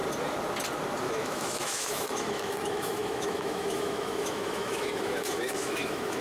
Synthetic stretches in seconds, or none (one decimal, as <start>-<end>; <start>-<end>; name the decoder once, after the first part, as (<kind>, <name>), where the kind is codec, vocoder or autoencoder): 1.0-6.2 (autoencoder, DAC-VAE)